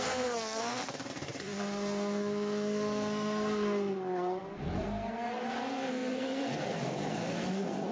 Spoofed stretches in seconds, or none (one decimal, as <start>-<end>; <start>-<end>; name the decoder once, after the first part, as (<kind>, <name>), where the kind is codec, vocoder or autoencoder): 0.0-7.9 (codec, SNAC)